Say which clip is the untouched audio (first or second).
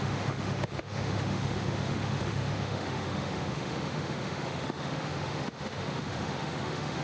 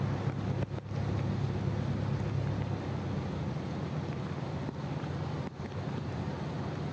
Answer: second